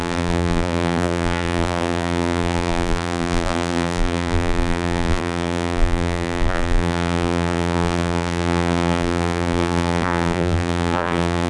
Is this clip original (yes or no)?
no